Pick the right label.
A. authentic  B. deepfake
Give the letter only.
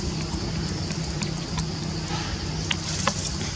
B